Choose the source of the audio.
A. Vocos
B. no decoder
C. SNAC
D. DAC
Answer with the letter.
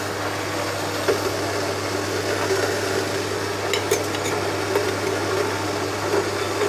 B